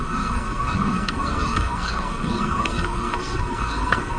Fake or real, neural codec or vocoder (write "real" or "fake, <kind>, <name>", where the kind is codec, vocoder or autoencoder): fake, codec, SNAC